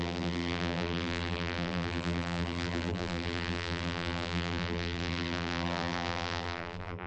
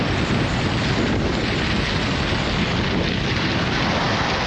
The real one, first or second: second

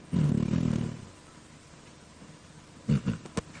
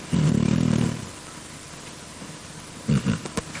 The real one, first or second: first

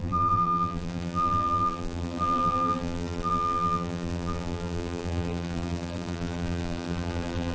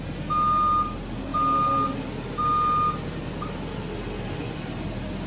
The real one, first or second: second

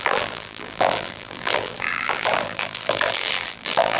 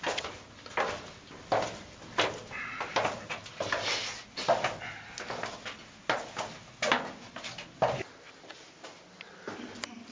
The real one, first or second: second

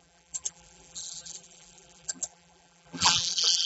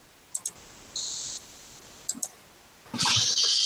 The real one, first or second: second